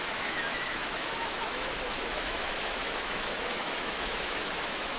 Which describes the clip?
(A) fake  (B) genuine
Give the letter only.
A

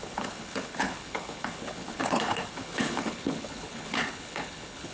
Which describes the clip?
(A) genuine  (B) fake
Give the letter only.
B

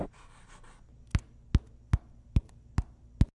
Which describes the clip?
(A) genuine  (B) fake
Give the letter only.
A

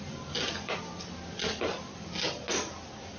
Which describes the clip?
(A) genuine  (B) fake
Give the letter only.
A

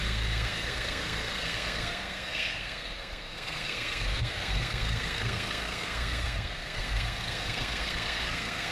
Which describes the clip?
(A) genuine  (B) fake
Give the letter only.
B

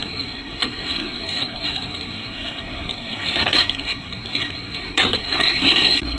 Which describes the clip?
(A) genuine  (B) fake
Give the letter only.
B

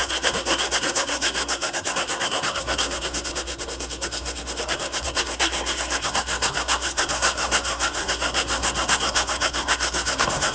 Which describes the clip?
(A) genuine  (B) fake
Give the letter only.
B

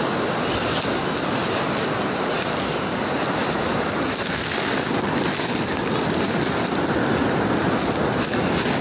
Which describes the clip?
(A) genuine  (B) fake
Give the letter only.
A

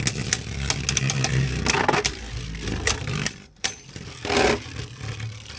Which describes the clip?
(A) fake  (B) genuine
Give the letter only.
B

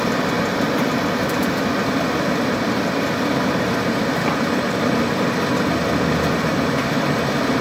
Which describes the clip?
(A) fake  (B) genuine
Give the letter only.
A